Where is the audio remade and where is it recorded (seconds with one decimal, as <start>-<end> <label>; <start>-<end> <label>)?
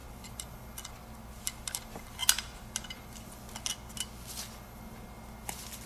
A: 0.0-5.9 recorded